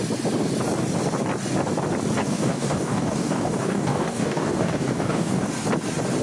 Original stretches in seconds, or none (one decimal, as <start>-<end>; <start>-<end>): 0.0-2.2; 5.5-6.2